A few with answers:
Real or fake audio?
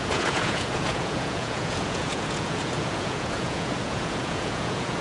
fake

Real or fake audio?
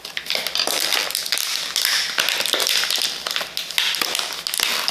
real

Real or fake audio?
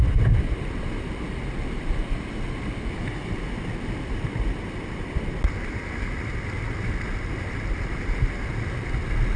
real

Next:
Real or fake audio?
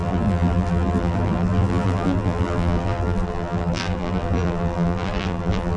fake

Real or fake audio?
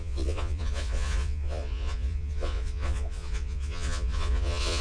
fake